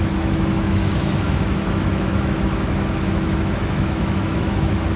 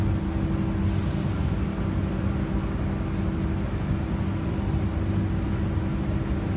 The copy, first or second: first